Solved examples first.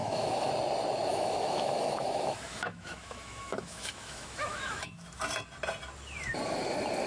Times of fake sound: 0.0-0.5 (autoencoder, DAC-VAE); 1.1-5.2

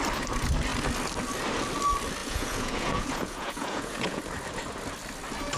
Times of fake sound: 2.2-4.2 (vocoder, Vocos)

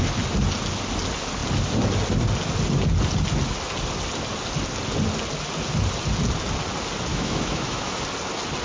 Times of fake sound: 7.1-8.0 (autoencoder, DAC-VAE)

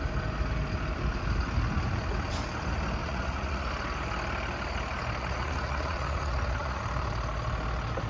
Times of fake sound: 3.0-3.7 (vocoder, Vocos); 5.2-6.8

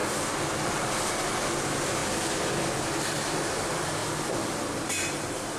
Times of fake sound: 0.7-2.0 (vocoder, BigVGAN v2); 3.3-4.0; 4.8-5.6

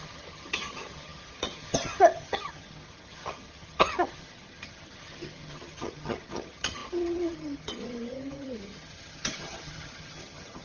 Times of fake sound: 0.0-10.6 (vocoder, HiFi-GAN)